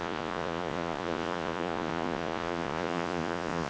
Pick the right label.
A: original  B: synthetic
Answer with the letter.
B